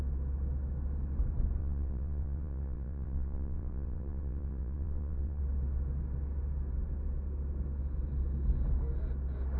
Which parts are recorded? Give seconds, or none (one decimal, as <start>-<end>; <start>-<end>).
0.0-1.6; 5.4-9.6